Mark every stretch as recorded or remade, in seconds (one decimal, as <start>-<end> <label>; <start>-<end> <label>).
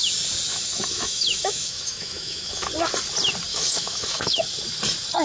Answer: 0.0-0.5 recorded; 0.5-2.7 remade; 2.7-3.5 recorded; 3.5-4.4 remade; 4.4-5.2 recorded